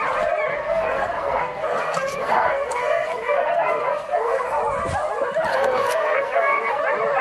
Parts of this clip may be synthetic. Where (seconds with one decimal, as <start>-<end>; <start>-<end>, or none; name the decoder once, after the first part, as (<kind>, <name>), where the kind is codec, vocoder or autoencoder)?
0.5-4.6 (codec, SNAC); 5.5-6.8